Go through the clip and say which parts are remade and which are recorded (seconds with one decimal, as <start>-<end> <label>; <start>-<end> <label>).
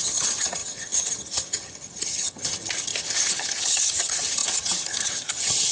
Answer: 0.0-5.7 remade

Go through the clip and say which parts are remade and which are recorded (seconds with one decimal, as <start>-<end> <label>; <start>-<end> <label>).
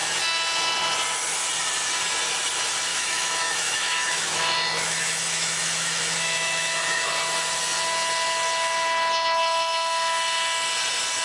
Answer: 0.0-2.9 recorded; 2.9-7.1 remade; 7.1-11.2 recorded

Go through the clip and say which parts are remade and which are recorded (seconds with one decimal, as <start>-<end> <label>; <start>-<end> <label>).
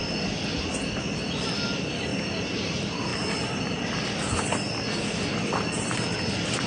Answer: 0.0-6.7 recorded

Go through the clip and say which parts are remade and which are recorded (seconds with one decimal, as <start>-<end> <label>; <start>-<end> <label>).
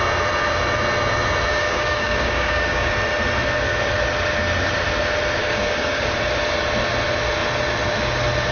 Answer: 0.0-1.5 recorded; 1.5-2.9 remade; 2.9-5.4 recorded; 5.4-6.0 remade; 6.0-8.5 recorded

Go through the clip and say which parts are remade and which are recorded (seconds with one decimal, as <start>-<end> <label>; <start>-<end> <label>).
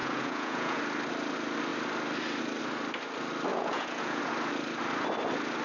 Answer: 0.0-0.8 remade; 0.8-3.5 recorded; 3.5-4.2 remade; 4.2-5.6 recorded